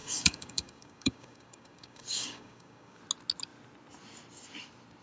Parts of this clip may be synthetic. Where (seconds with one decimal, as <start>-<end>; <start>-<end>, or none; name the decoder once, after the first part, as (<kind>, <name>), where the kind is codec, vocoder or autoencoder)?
0.0-3.0 (codec, DAC)